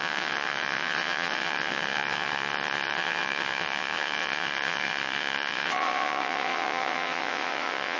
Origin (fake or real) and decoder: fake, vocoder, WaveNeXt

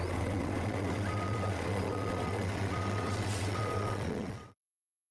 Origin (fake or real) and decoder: fake, vocoder, WaveNeXt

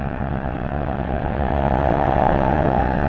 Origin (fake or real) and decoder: fake, vocoder, WaveNeXt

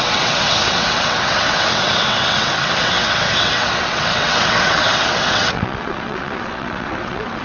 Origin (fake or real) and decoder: fake, vocoder, WaveNeXt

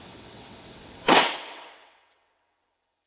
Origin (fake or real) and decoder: fake, vocoder, WaveNeXt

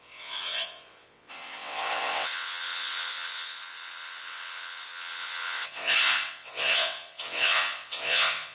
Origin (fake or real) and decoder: fake, vocoder, WaveNeXt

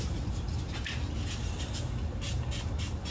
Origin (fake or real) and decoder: real